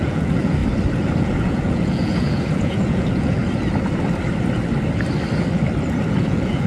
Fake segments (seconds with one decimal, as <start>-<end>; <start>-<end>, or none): 0.0-0.6; 1.2-3.4; 6.1-6.7